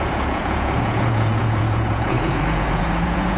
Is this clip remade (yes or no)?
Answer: yes